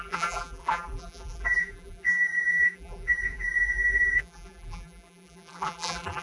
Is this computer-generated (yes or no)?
yes